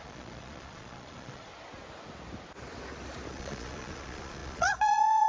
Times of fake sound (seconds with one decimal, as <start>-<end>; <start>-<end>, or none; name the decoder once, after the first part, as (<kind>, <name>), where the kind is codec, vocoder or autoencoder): 0.0-1.5 (vocoder, Vocos); 3.3-5.3